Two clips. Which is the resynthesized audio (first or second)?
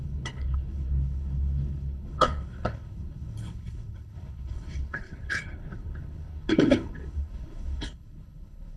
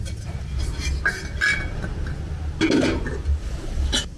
first